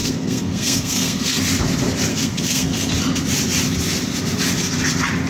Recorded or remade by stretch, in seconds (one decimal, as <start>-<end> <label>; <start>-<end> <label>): 0.0-1.4 remade; 1.4-2.1 recorded; 2.1-2.9 remade; 2.9-5.3 recorded